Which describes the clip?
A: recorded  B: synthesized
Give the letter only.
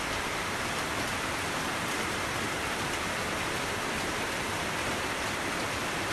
A